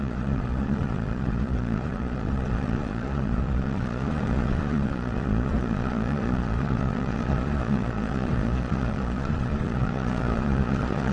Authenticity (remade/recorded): remade